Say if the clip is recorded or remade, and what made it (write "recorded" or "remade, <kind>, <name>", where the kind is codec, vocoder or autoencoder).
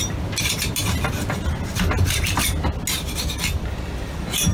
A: recorded